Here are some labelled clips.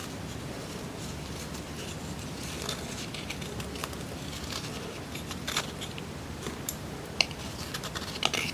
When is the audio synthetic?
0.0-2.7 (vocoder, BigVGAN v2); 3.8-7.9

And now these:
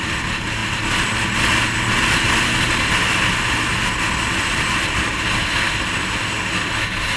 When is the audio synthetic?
none

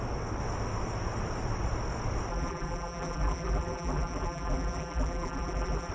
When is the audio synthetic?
2.3-5.9 (vocoder, BigVGAN v2)

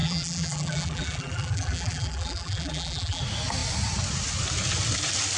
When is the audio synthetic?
0.0-3.2 (vocoder, BigVGAN v2)

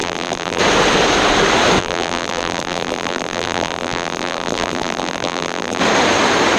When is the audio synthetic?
0.0-0.6 (vocoder, BigVGAN v2); 1.8-5.8